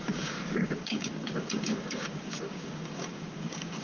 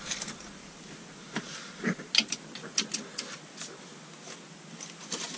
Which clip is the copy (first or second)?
first